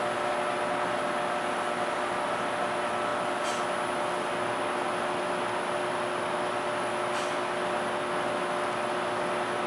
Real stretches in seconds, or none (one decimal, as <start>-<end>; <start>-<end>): 0.0-9.7